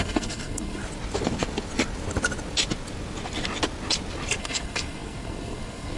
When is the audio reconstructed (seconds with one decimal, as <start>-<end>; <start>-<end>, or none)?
0.0-0.8; 4.4-6.0